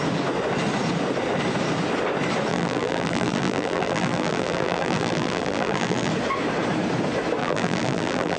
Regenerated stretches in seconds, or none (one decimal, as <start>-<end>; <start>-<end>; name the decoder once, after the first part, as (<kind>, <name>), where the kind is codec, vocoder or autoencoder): 2.5-6.1 (vocoder, BigVGAN v2); 7.4-8.4